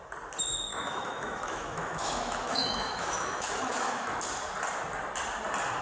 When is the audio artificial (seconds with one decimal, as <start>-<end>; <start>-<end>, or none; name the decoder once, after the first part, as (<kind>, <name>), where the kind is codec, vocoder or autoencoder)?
0.7-4.2 (autoencoder, DAC-VAE)